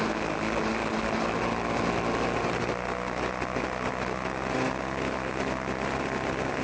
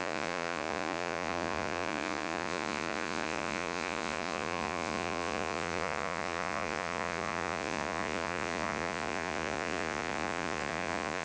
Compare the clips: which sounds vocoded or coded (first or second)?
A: second